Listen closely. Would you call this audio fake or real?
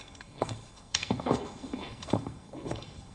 fake